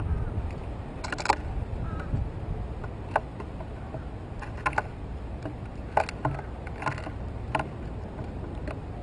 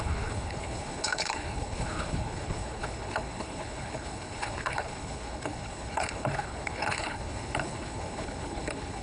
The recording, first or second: first